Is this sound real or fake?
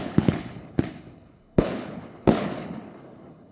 fake